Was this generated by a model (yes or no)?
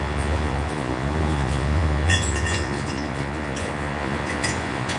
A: yes